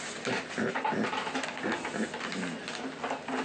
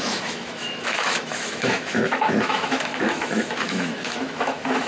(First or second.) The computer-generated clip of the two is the second